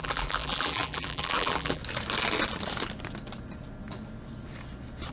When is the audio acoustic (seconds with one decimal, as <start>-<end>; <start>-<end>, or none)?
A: 1.8-5.1